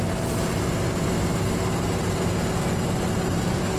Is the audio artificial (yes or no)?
no